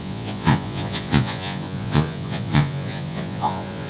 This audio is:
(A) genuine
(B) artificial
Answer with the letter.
B